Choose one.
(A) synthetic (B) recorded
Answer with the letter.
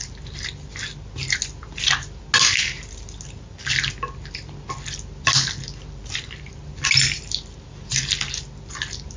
B